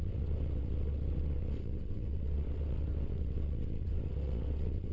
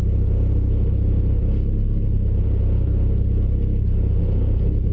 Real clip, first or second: second